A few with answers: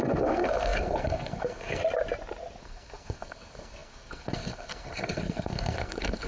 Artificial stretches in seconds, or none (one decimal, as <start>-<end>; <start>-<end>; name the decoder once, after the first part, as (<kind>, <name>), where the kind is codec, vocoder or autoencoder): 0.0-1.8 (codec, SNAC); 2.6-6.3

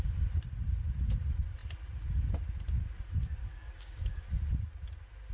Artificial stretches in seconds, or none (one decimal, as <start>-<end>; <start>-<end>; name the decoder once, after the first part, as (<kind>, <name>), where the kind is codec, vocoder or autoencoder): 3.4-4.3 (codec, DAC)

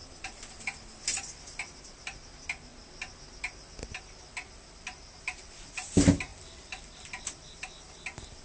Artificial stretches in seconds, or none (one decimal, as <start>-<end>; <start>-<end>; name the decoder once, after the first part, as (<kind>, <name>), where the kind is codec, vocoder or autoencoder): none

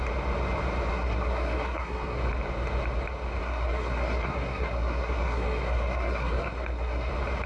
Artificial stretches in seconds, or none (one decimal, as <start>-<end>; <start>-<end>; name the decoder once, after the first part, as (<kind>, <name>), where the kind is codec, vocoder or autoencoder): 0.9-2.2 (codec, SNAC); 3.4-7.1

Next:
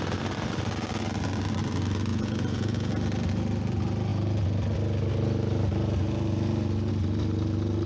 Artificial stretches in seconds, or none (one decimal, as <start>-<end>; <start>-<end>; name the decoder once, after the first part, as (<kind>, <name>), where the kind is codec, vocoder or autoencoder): 2.1-2.9 (vocoder, Vocos)

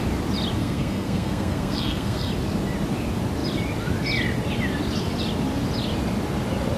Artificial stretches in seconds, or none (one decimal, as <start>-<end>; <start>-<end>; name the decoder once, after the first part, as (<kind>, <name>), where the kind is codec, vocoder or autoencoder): 0.6-2.3 (codec, SNAC)